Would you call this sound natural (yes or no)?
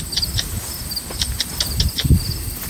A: yes